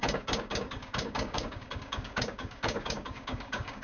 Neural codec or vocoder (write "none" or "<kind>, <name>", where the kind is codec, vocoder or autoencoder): codec, DAC